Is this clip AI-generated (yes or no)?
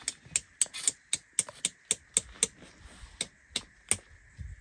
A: no